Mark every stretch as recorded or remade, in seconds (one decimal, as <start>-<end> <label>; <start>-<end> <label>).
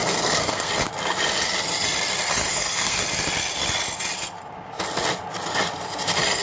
0.0-0.7 remade; 0.7-2.5 recorded; 2.5-3.0 remade; 3.0-6.4 recorded